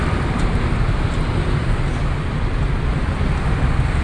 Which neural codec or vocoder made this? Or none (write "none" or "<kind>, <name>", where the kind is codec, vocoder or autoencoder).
none